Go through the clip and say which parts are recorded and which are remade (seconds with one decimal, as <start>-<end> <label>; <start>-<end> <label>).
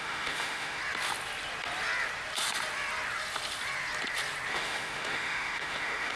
0.0-0.8 remade; 0.8-4.5 recorded; 4.5-6.2 remade